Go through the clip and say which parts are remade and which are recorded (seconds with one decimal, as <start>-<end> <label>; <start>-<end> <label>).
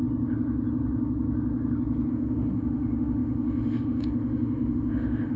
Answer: 0.0-2.1 recorded; 2.1-5.4 remade